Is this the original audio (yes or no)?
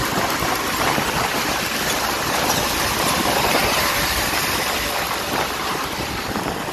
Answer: no